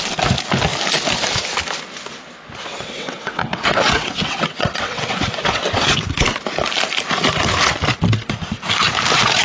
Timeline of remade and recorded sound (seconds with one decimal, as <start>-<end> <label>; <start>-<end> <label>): 0.0-2.7 recorded; 2.7-6.0 remade; 6.0-9.4 recorded